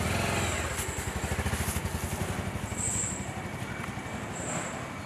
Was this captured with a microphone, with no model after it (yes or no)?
yes